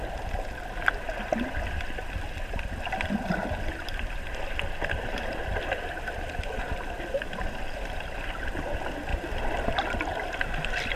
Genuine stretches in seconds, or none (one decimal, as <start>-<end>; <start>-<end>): 0.0-11.0